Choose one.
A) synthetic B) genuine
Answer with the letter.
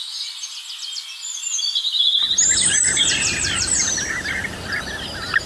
B